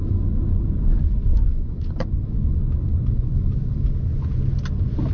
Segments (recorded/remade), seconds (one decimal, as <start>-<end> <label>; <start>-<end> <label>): 0.0-1.3 recorded; 1.3-4.4 remade; 4.4-5.1 recorded